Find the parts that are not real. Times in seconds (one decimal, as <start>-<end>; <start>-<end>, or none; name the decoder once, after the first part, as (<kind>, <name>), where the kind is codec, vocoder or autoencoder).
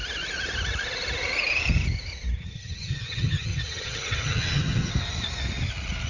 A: 2.4-4.9 (vocoder, HiFi-GAN)